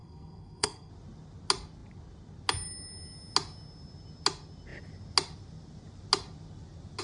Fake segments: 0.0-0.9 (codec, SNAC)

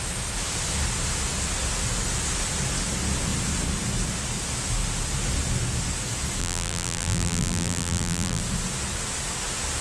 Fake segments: 6.4-8.4 (vocoder, BigVGAN v2)

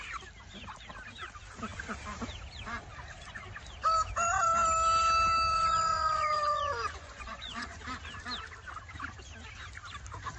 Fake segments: 5.5-7.8 (vocoder, Vocos)

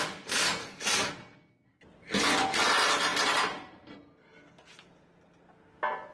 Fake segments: 0.6-1.1 (codec, SNAC)

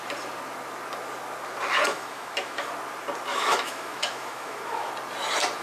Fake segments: 1.9-2.7 (autoencoder, DAC-VAE); 3.3-4.9

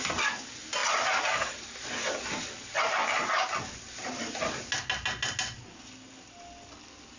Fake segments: none

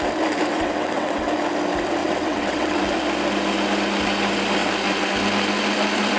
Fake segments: 0.5-1.3 (vocoder, WaveNeXt); 2.0-2.8